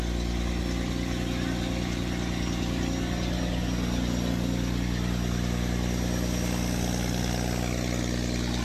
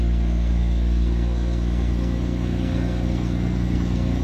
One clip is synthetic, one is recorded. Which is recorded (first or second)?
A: first